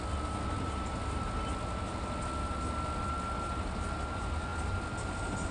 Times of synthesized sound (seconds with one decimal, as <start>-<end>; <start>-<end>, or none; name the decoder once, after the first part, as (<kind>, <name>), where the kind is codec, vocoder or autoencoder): 4.5-5.5 (vocoder, BigVGAN v2)